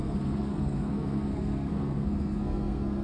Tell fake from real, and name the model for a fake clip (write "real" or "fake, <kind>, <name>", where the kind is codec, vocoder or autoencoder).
fake, codec, SNAC